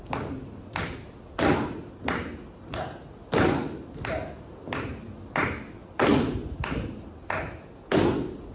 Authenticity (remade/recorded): recorded